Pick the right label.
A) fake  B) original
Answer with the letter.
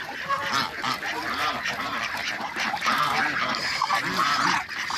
A